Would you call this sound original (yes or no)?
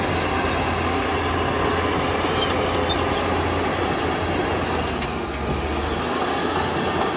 yes